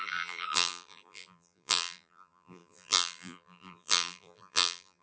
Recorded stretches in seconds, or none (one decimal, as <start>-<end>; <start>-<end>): none